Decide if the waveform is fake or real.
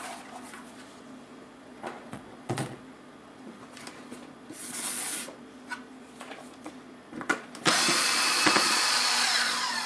fake